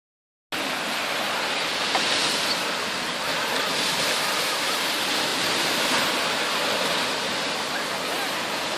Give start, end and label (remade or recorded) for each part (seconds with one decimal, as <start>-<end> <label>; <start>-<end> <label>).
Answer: 0.0-3.3 recorded; 3.3-4.8 remade; 4.8-5.3 recorded; 5.3-6.1 remade; 6.1-8.8 recorded